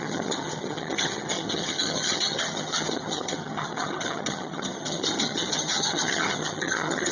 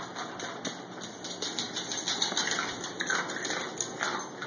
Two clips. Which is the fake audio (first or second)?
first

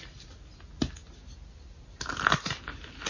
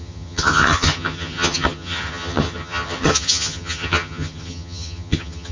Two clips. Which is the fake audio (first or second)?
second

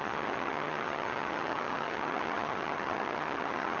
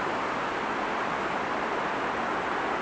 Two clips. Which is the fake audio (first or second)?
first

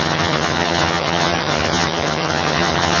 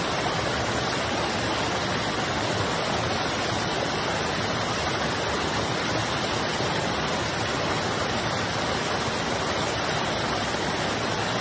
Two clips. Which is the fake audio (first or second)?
first